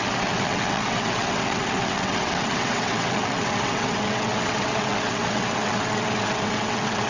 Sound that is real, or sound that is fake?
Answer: fake